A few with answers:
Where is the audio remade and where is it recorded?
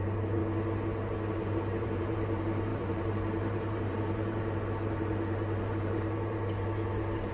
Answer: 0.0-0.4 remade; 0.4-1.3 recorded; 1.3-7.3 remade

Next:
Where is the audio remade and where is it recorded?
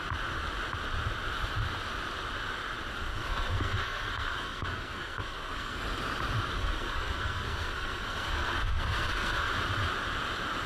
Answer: 0.0-3.1 recorded; 3.1-5.8 remade; 5.8-6.6 recorded; 6.6-9.5 remade; 9.5-10.7 recorded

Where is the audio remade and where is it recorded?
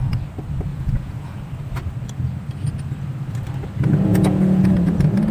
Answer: 0.0-0.7 recorded; 0.7-1.4 remade; 1.4-4.1 recorded; 4.1-4.7 remade; 4.7-5.3 recorded